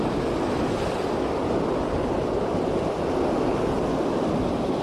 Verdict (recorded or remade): recorded